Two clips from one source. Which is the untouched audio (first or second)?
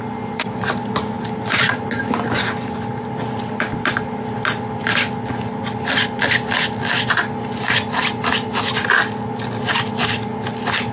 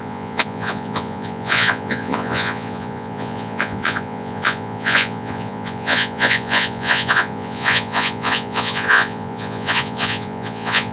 first